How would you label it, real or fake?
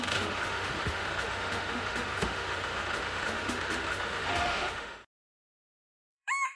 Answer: fake